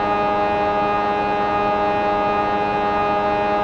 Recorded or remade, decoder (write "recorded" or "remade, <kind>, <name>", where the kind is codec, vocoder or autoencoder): recorded